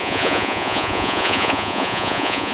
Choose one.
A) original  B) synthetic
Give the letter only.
B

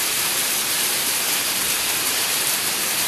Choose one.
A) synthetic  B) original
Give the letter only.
A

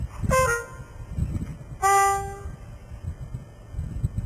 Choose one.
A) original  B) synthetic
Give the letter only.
A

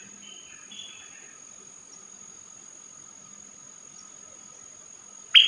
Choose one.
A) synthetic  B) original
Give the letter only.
B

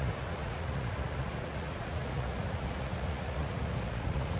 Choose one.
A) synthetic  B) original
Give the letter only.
A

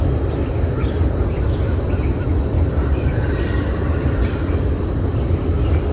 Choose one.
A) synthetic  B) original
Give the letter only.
B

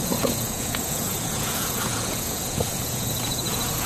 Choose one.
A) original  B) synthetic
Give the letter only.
B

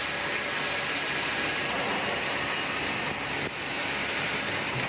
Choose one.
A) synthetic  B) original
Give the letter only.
B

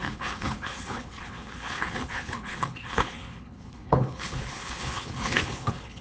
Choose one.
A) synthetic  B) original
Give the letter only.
A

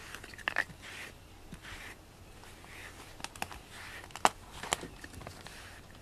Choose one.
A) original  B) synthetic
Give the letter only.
A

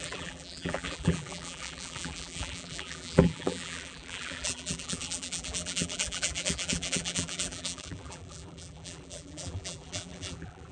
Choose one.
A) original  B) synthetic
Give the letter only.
B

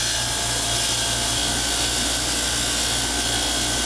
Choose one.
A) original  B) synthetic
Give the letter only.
A